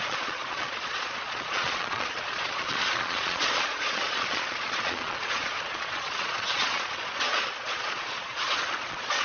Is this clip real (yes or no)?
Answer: no